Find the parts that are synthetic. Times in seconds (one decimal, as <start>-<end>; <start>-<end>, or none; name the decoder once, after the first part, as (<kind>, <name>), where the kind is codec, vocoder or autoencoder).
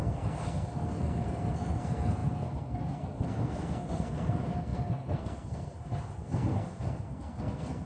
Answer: 0.0-7.9 (codec, SNAC)